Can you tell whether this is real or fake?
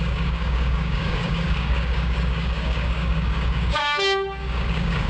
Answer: fake